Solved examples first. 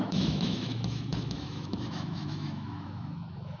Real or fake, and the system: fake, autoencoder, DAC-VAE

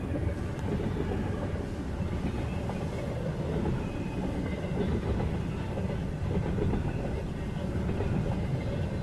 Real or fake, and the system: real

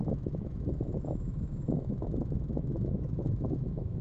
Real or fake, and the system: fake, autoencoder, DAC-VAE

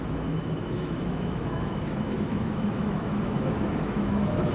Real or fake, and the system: fake, autoencoder, DAC-VAE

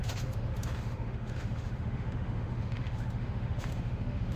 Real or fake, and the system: fake, autoencoder, DAC-VAE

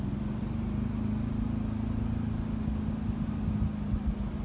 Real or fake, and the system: real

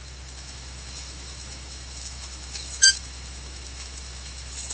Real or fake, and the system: fake, autoencoder, DAC-VAE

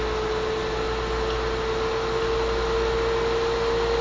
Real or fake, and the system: real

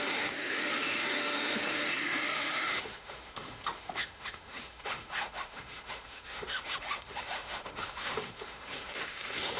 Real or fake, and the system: fake, autoencoder, DAC-VAE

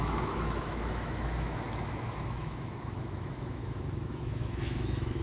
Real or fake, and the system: fake, autoencoder, DAC-VAE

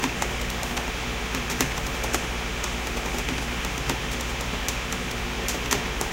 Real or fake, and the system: fake, autoencoder, DAC-VAE